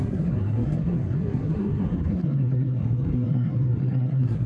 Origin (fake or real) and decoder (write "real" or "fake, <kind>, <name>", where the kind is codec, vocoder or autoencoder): fake, codec, SNAC